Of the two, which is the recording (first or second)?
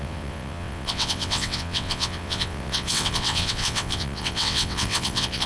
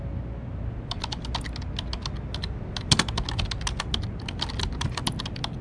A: second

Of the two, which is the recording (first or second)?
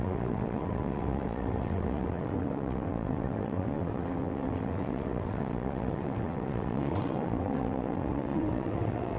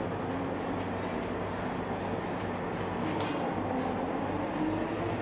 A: second